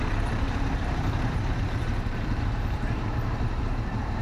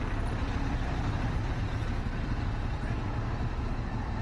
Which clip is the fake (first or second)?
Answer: first